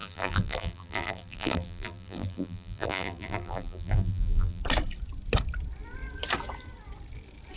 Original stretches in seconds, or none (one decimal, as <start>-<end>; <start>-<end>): 4.6-7.6